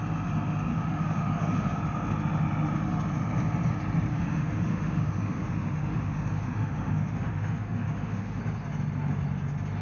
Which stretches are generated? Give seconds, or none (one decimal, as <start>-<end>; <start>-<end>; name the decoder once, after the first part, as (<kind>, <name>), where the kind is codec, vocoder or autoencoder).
0.7-1.8 (autoencoder, DAC-VAE); 4.1-8.4